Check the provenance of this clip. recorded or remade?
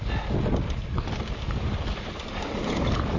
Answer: remade